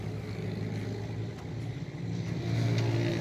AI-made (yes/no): no